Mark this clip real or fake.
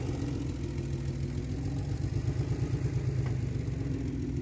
real